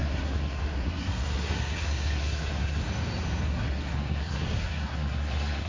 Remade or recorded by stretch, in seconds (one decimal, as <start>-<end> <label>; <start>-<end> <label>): 0.0-2.8 remade; 2.8-3.4 recorded; 3.4-5.7 remade